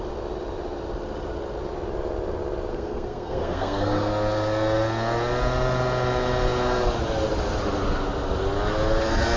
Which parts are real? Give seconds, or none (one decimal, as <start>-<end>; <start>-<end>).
0.0-2.7; 4.1-9.4